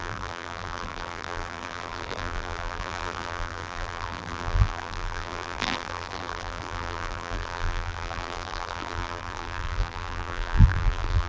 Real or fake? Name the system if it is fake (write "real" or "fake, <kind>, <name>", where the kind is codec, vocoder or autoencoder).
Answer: fake, vocoder, BigVGAN v2